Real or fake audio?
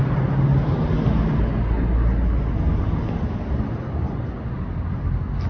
real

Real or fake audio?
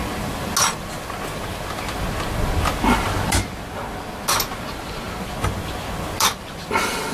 real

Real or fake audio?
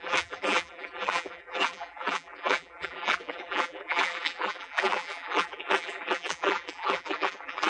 fake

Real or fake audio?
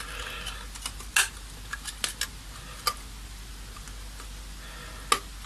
real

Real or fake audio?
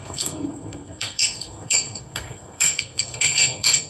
fake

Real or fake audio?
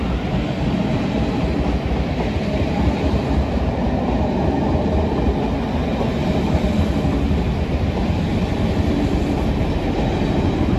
real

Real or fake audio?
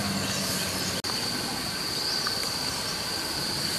real